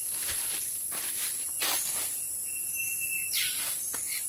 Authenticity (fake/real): fake